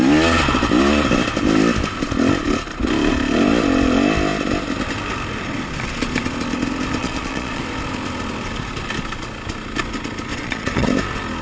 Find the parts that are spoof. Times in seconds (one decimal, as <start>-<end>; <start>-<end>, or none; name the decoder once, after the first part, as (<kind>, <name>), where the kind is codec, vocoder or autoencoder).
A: 7.0-7.6 (vocoder, Vocos); 10.3-10.9